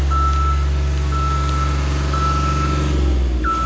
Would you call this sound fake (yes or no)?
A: no